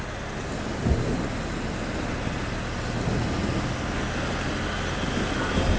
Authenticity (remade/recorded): recorded